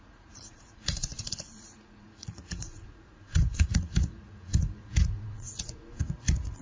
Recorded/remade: remade